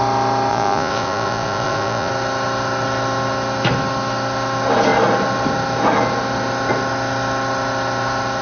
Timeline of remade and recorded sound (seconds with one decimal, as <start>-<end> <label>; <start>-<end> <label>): 0.0-0.5 recorded; 0.5-2.1 remade; 2.1-8.4 recorded